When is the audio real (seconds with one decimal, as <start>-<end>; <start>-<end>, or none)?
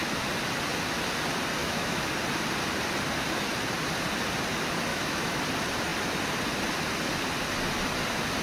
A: 0.0-1.6; 2.1-4.9; 5.4-8.4